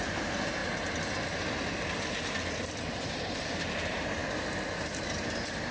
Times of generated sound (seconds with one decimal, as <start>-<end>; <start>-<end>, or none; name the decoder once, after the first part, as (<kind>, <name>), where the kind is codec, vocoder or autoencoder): 0.0-0.6 (vocoder, BigVGAN v2); 3.0-4.2; 4.9-5.7